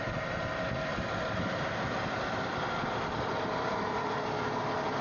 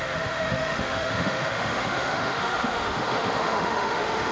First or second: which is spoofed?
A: second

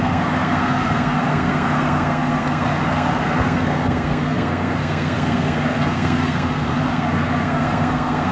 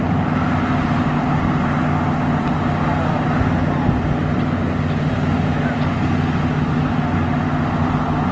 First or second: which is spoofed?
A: first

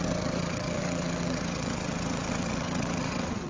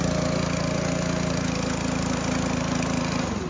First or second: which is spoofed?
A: first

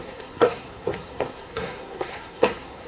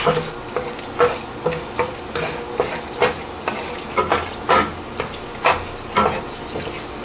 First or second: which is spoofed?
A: first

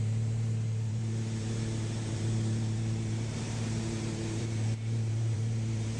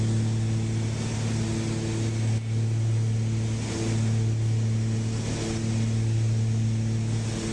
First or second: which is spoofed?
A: first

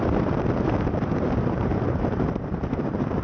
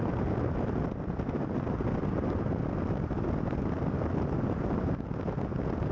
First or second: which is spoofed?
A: first